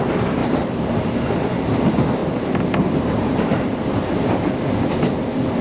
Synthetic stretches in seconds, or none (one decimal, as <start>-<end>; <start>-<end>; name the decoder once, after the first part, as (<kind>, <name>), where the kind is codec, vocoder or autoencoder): 0.4-1.3 (vocoder, BigVGAN v2); 2.2-4.5